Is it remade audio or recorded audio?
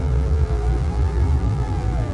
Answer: remade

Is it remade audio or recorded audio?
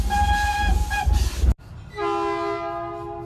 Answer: recorded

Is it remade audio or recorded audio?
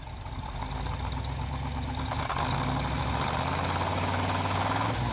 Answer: recorded